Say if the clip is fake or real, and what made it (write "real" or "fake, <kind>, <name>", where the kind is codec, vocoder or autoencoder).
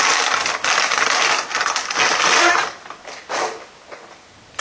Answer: real